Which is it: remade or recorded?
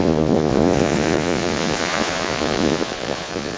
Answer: remade